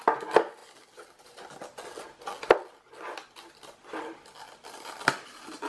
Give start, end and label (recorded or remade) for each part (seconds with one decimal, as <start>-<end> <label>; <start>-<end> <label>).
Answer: 0.0-5.7 recorded